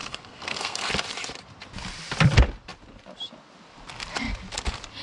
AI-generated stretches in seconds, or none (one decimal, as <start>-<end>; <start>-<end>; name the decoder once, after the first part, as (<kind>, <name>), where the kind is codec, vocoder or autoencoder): 0.0-0.9 (codec, SNAC)